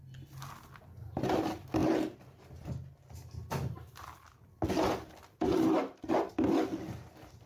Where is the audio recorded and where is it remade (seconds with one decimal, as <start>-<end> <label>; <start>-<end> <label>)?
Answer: 0.0-7.5 recorded